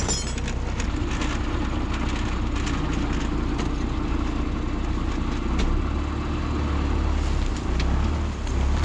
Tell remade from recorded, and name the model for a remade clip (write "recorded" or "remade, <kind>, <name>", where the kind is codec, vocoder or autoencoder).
recorded